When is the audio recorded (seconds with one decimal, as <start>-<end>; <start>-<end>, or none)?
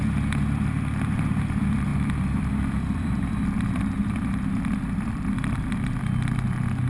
0.0-1.9; 6.0-6.9